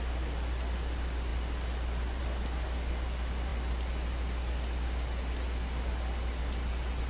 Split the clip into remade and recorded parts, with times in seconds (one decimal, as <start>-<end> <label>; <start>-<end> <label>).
0.0-7.1 recorded